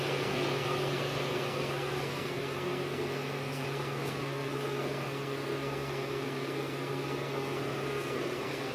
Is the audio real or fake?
fake